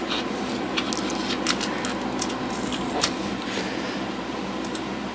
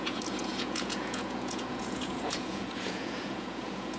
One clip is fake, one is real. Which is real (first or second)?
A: first